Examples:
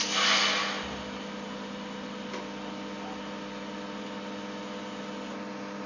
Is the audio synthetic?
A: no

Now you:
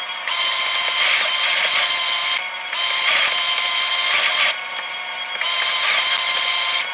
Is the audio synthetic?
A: no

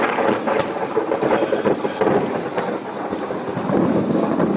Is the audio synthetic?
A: no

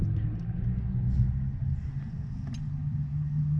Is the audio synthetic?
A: no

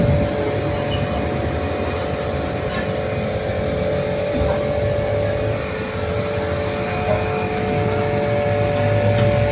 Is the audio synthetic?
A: no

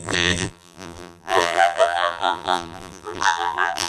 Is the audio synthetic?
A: yes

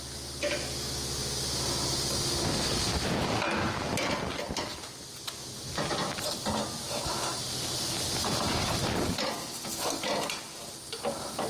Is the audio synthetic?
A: no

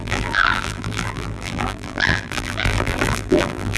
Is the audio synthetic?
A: yes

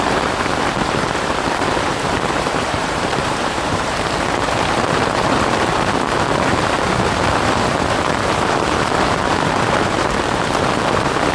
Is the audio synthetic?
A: yes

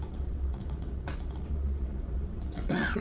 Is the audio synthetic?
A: yes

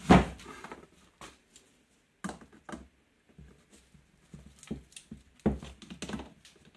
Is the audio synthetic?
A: no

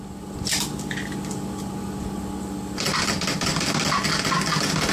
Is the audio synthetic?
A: no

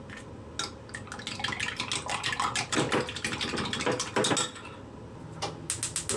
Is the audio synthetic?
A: no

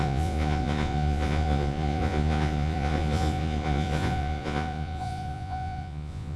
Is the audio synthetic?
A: yes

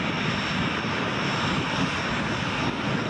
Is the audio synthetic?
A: no